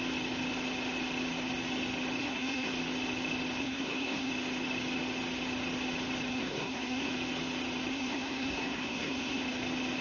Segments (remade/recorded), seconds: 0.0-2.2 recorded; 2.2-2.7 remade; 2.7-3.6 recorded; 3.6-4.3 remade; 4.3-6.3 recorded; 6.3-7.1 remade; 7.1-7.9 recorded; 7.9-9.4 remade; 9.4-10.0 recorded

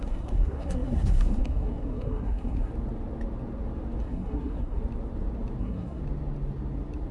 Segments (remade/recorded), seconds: 0.0-2.7 remade; 2.7-4.0 recorded; 4.0-4.8 remade; 4.8-5.6 recorded; 5.6-6.0 remade; 6.0-7.1 recorded

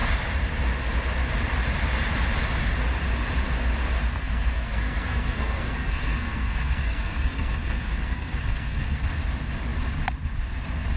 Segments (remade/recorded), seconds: 0.0-4.2 recorded; 4.2-9.0 remade; 9.0-11.0 recorded

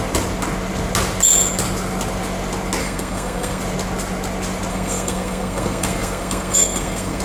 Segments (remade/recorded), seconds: 0.0-2.8 recorded; 2.8-3.6 remade; 3.6-4.7 recorded; 4.7-7.2 remade

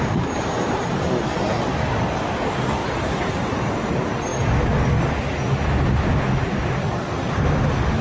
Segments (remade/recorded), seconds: 0.0-2.8 recorded; 2.8-3.7 remade; 3.7-8.0 recorded